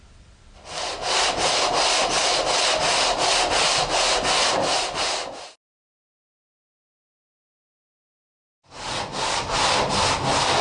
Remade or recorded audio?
recorded